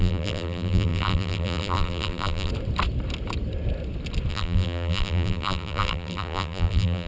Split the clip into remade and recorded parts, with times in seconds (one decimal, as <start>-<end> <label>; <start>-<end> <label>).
0.0-2.5 remade; 2.5-4.3 recorded; 4.3-7.1 remade